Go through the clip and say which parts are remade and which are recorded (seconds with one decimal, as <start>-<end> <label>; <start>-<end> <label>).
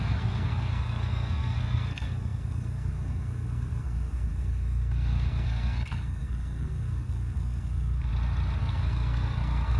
0.0-8.1 remade; 8.1-8.6 recorded; 8.6-9.8 remade